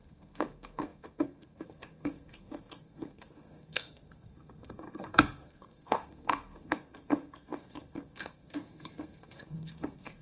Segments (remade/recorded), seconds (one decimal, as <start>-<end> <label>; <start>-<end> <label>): 0.0-10.2 remade